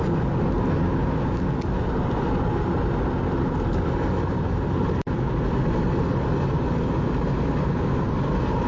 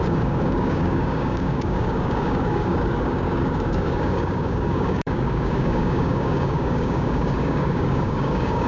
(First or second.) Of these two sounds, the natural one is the first